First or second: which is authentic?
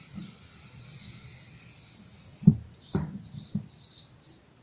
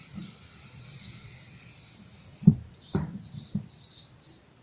first